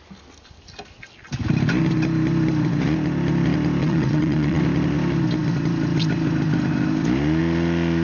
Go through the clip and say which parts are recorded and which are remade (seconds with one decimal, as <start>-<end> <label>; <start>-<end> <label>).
0.0-3.8 recorded; 3.8-4.6 remade; 4.6-8.0 recorded